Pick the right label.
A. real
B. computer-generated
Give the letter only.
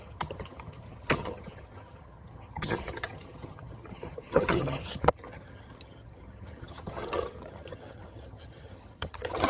B